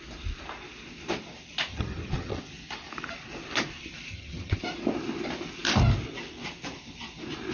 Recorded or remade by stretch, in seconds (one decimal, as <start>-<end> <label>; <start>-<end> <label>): 0.0-1.7 recorded; 1.7-2.4 remade; 2.4-4.1 recorded; 4.1-4.6 remade; 4.6-7.5 recorded